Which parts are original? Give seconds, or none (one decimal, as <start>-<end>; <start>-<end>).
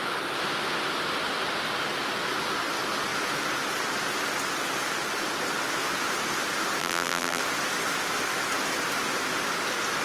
0.0-6.8; 7.4-10.0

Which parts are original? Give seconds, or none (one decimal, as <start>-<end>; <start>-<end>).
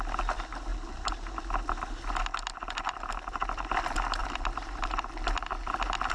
0.0-0.7; 1.4-4.2; 5.1-6.1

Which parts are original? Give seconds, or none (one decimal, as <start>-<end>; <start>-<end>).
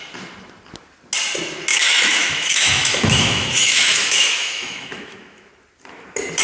0.0-1.7; 5.5-6.4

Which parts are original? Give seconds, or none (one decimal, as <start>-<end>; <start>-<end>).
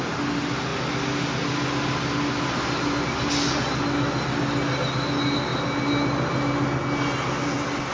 0.0-7.9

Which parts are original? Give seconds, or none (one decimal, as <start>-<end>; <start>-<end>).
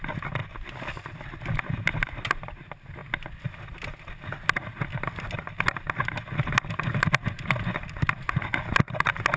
0.0-9.4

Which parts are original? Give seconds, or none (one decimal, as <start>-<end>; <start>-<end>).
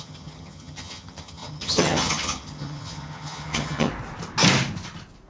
3.9-5.3